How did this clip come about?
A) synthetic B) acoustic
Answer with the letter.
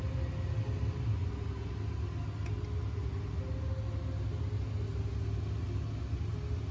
B